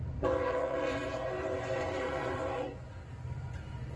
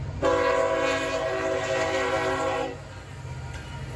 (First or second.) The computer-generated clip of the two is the first